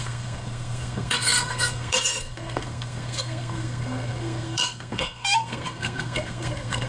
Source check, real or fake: fake